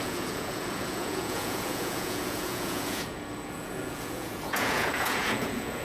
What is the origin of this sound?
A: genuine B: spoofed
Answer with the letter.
B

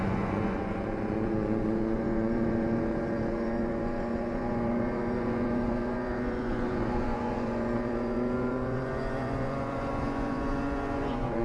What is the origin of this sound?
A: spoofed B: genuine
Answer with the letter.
A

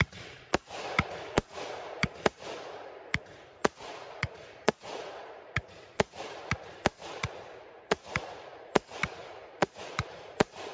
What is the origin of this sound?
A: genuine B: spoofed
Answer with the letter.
B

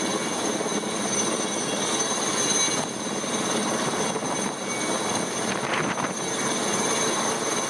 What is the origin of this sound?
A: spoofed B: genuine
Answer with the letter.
B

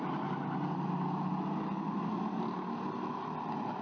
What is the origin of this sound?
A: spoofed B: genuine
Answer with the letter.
B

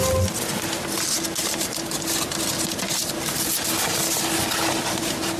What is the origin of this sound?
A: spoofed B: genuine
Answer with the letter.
B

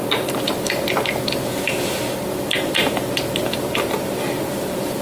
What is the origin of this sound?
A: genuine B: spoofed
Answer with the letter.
B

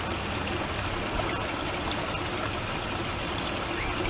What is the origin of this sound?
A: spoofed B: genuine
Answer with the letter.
B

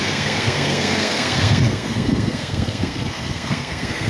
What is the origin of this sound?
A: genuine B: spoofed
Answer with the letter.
B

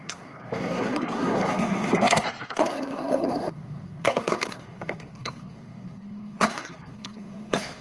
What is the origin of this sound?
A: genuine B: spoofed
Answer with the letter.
B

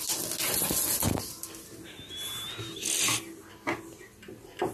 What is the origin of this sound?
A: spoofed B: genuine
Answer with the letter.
B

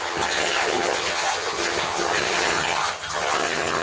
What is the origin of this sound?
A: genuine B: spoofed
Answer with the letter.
B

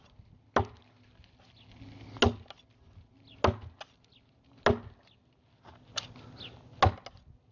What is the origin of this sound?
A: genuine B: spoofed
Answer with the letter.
A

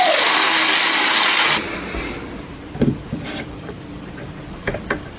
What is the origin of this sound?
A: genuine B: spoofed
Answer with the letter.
A